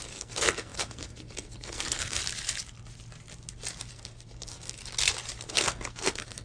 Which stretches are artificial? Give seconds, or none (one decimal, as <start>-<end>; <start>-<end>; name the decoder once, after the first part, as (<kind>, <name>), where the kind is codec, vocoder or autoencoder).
0.0-2.2 (codec, SNAC); 3.9-4.8; 5.5-6.4